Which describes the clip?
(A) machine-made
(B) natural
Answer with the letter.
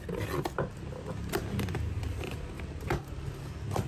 B